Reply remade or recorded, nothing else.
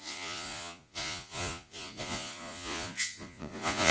remade